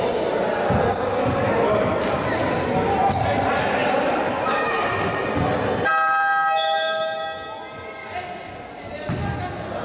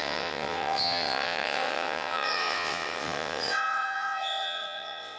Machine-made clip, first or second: second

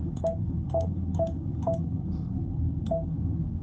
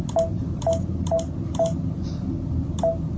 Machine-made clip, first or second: first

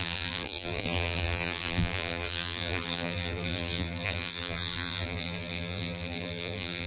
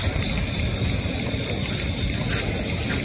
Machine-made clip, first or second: first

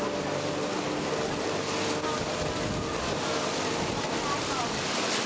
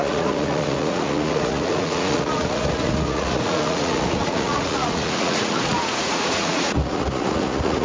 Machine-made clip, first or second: second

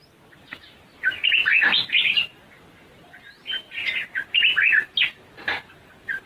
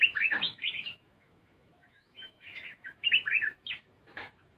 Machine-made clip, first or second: second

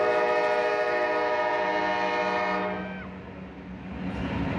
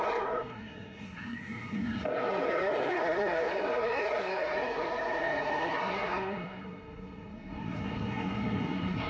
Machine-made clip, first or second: second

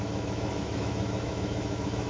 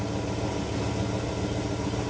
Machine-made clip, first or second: first